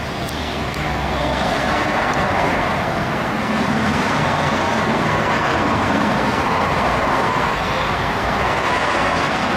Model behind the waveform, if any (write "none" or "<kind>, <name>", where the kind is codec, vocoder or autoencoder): codec, SNAC